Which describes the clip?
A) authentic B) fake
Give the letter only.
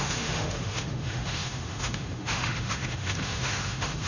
B